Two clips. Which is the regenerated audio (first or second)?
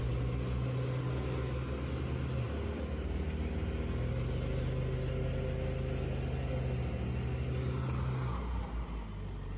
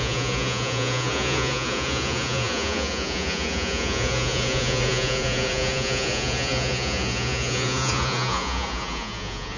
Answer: second